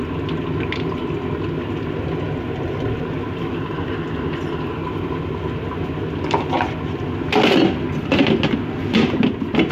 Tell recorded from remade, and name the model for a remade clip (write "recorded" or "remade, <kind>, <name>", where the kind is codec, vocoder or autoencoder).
recorded